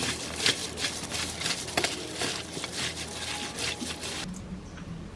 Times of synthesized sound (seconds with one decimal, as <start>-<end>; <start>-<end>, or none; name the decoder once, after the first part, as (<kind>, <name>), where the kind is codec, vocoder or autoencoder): 0.0-0.6 (vocoder, BigVGAN v2); 3.7-5.2